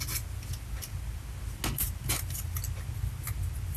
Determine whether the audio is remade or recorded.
recorded